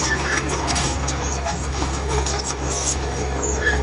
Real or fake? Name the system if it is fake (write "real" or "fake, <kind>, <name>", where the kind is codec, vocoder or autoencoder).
fake, codec, DAC